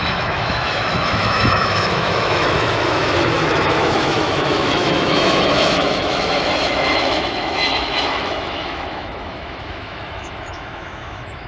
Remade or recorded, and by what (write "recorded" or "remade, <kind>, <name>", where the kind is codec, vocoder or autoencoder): remade, autoencoder, DAC-VAE